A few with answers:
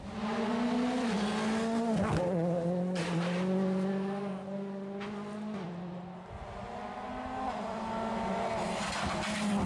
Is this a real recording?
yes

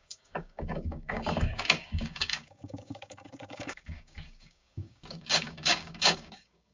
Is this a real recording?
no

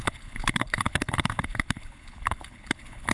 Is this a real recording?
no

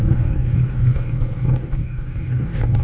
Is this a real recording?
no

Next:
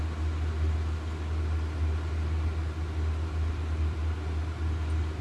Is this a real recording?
yes